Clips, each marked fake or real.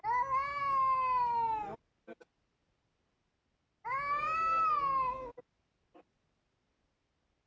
real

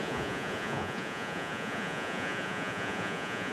fake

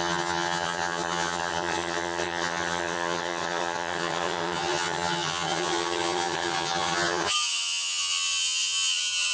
fake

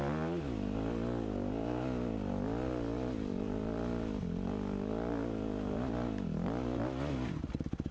real